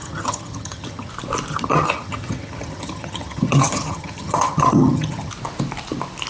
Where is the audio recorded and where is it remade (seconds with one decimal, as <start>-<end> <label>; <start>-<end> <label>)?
0.0-1.1 remade; 1.1-1.5 recorded; 1.5-5.3 remade; 5.3-6.3 recorded